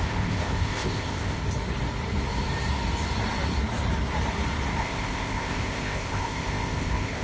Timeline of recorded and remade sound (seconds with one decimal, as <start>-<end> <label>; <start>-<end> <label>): 0.0-1.4 remade; 1.4-4.8 recorded; 4.8-7.2 remade